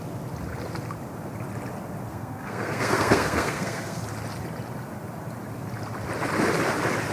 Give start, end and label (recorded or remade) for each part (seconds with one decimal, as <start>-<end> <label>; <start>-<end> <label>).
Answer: 0.0-2.1 recorded; 2.1-4.0 remade; 4.0-7.1 recorded